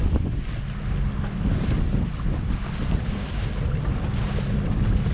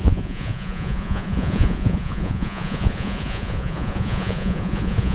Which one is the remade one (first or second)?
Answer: second